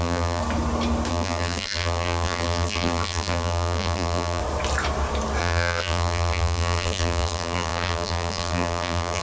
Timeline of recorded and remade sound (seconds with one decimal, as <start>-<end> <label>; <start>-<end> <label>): 0.0-0.4 remade; 0.4-1.1 recorded; 1.1-4.4 remade; 4.4-5.4 recorded; 5.4-9.2 remade